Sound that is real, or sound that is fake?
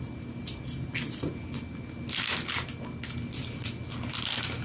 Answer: real